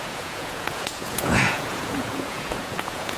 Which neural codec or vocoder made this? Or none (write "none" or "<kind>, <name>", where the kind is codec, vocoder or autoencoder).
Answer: vocoder, Vocos